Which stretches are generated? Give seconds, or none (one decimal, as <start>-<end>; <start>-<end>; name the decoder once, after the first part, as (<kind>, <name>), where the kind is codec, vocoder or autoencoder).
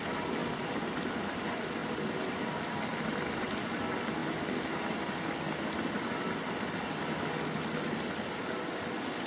0.4-1.2 (vocoder, BigVGAN v2); 1.8-3.8